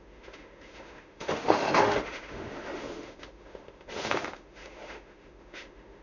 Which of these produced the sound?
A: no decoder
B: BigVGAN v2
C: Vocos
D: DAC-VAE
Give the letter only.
D